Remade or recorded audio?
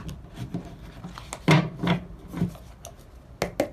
recorded